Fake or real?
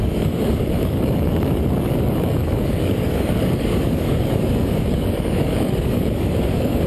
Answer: fake